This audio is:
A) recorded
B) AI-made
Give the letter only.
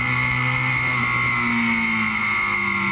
A